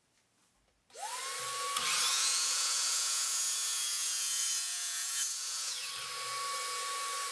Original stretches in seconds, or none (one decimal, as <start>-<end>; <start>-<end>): 0.0-2.1; 5.9-7.3